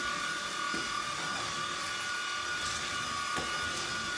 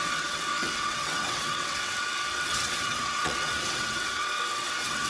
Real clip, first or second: first